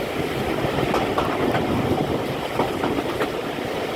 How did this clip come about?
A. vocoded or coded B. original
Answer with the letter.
B